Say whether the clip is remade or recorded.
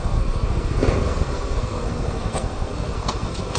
remade